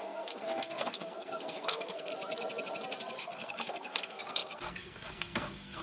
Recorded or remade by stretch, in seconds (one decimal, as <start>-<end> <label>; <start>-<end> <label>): 0.0-2.1 remade; 2.1-3.2 recorded; 3.2-5.8 remade